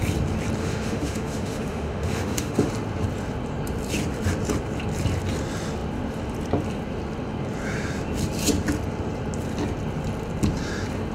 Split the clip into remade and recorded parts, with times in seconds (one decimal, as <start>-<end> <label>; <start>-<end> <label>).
0.0-0.6 recorded; 0.6-2.7 remade; 2.7-11.1 recorded